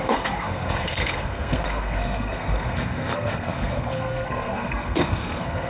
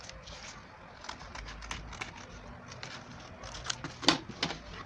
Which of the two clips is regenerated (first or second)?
first